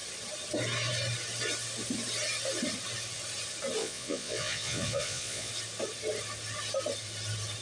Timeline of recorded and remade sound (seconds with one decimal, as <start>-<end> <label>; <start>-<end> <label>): 0.0-3.8 recorded; 3.8-5.5 remade; 5.5-7.6 recorded